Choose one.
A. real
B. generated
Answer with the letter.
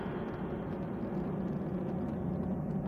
A